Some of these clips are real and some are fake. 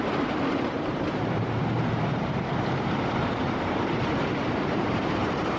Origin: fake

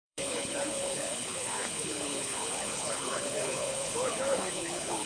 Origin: fake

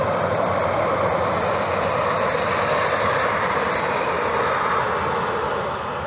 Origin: real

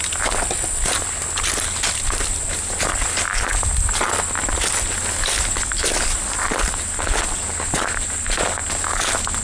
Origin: real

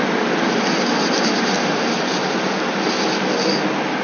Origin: real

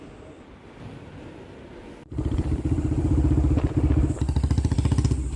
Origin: fake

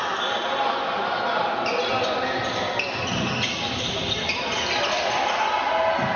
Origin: real